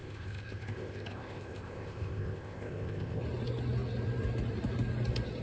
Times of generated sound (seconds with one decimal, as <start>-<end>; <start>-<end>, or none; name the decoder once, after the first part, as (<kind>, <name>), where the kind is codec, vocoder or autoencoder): 0.0-3.2 (codec, ZipCodec)